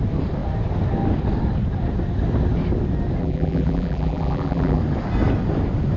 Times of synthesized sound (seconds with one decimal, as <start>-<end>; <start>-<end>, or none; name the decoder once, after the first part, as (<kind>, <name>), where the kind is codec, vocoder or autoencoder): 3.2-4.8 (vocoder, BigVGAN v2)